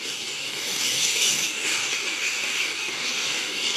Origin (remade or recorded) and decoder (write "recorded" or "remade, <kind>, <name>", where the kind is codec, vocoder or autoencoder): remade, codec, DAC